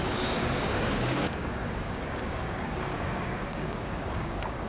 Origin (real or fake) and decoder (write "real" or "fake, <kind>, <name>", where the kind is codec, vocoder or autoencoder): fake, codec, DAC